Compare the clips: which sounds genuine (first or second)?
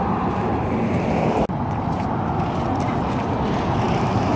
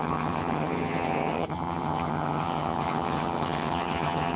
first